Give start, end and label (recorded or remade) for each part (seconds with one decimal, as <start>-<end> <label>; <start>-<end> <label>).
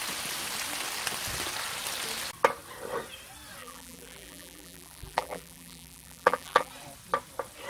0.0-3.6 recorded; 3.6-6.7 remade; 6.7-7.7 recorded